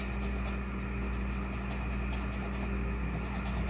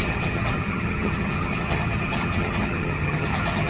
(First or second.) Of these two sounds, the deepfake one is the second